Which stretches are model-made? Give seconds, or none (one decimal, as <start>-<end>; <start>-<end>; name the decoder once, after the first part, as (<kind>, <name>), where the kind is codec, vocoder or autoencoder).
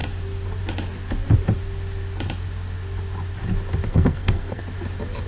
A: 3.9-4.6 (codec, SNAC)